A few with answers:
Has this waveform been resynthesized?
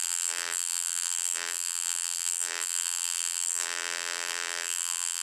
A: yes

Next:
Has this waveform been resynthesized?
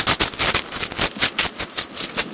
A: no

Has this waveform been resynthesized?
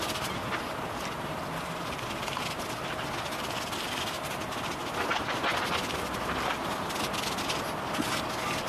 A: no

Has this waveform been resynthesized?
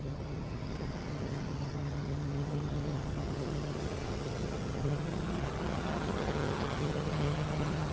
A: yes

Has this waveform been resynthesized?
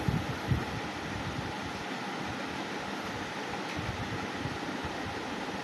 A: no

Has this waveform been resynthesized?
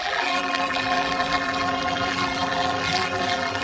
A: yes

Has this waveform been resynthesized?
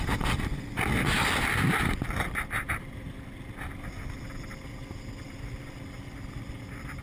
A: no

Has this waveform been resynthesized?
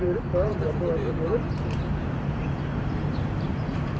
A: yes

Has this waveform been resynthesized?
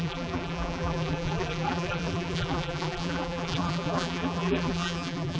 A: yes